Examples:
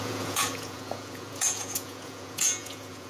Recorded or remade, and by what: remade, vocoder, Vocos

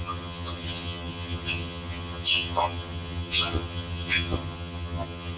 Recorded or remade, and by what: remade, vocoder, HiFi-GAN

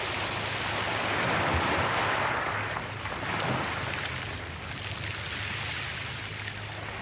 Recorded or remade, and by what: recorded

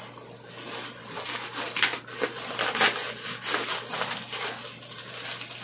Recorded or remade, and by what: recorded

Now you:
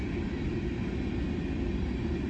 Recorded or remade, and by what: recorded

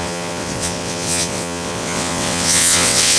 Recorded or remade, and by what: remade, vocoder, WaveNeXt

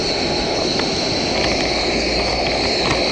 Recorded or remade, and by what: recorded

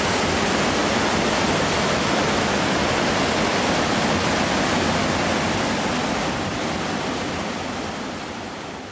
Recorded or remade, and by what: recorded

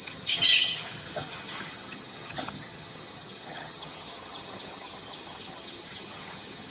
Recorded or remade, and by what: remade, vocoder, HiFi-GAN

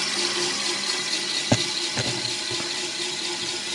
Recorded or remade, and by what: recorded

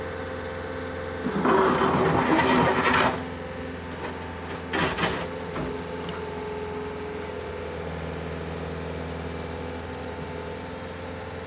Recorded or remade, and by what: recorded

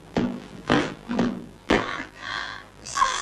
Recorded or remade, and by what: remade, vocoder, BigVGAN v2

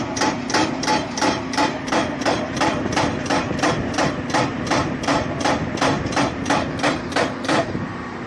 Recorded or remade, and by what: remade, vocoder, BigVGAN v2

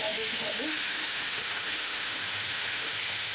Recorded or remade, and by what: remade, autoencoder, DAC-VAE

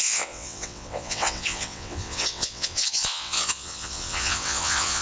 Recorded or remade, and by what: remade, vocoder, WaveNeXt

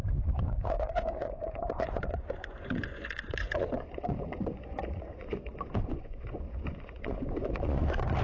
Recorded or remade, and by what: remade, vocoder, Vocos